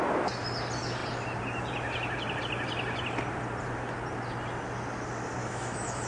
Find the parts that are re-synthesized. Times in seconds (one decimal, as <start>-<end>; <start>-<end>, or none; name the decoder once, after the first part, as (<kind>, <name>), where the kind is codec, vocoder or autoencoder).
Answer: 5.4-6.1 (autoencoder, DAC-VAE)